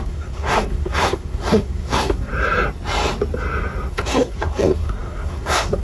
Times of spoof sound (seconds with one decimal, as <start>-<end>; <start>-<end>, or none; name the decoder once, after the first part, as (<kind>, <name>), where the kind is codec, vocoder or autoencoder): 0.0-2.3 (codec, SNAC); 3.9-5.8